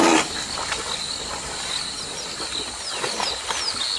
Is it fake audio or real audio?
real